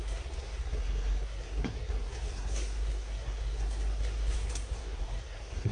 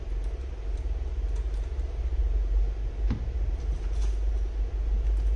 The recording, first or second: second